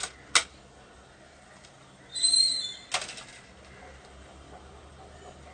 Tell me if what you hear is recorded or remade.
recorded